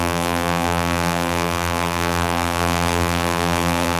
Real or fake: fake